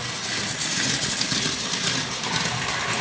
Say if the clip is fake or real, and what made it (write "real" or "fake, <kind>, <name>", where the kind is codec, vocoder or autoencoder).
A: real